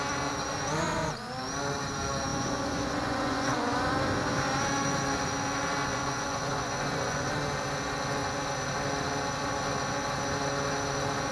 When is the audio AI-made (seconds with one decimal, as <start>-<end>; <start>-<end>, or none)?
2.3-3.9; 5.9-7.3